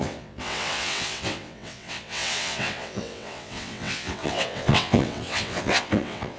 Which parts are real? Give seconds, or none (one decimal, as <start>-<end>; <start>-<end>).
none